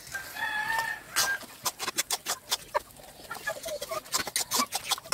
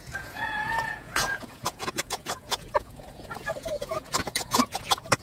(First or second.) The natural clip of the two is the first